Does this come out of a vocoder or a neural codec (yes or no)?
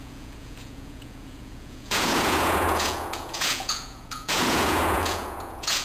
yes